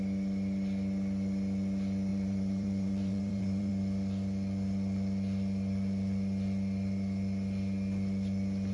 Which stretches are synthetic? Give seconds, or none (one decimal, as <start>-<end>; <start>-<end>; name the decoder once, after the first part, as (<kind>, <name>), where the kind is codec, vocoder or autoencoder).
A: 2.1-3.7 (vocoder, BigVGAN v2)